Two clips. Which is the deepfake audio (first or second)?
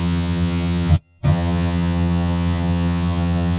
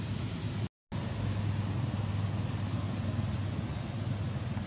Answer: first